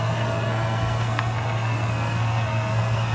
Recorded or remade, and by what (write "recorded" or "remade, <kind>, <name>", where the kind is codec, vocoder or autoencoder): remade, codec, SNAC